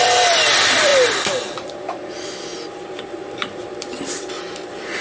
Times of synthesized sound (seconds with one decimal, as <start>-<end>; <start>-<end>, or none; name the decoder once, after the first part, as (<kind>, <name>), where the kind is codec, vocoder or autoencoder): 0.0-0.9 (vocoder, BigVGAN v2); 2.8-5.0